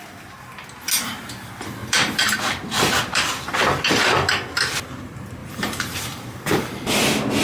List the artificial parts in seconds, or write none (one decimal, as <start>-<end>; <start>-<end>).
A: 1.8-3.8; 5.4-6.9